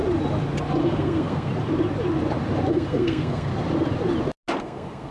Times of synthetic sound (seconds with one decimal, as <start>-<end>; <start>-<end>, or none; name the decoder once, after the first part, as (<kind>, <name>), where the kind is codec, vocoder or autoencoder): 0.8-1.5 (codec, SNAC); 2.7-3.5; 4.6-5.1